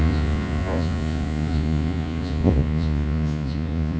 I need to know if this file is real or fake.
fake